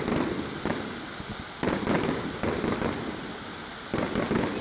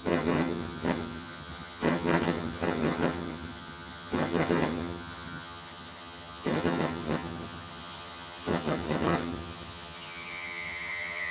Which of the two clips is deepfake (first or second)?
second